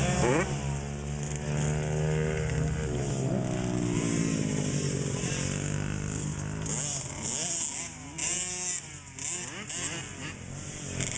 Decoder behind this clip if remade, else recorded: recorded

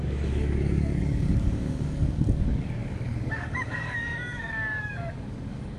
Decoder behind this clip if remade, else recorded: remade, codec, DAC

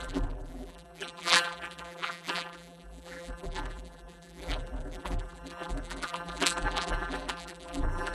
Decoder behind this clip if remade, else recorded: remade, vocoder, BigVGAN v2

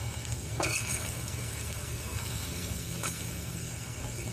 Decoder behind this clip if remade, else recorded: remade, codec, SNAC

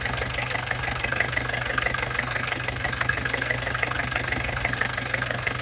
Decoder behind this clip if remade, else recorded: remade, codec, SNAC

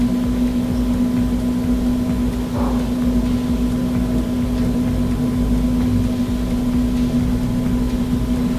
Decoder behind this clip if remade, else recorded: recorded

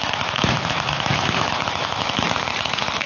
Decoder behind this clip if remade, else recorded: remade, autoencoder, DAC-VAE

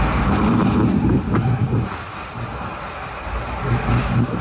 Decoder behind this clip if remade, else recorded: recorded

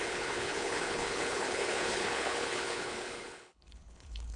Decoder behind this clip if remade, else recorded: remade, codec, HILCodec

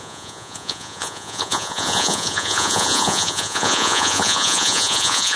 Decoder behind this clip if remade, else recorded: remade, vocoder, Vocos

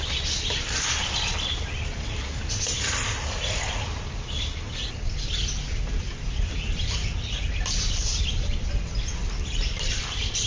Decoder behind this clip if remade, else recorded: recorded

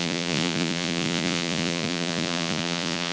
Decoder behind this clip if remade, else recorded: remade, vocoder, Vocos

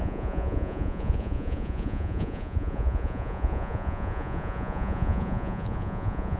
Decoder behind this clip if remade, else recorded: remade, vocoder, Vocos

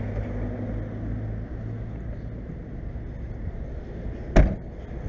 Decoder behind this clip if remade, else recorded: recorded